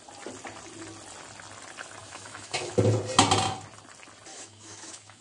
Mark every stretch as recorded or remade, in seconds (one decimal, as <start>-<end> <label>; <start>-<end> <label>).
0.0-2.0 recorded; 2.0-2.7 remade; 2.7-4.3 recorded; 4.3-5.2 remade